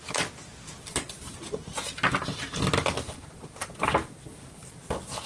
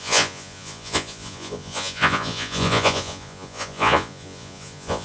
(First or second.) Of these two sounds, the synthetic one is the second